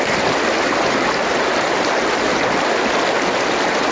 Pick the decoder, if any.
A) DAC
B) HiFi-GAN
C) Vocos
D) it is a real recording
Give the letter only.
D